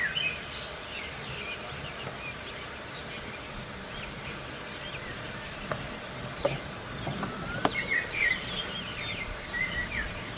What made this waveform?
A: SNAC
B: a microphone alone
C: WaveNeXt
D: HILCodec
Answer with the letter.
B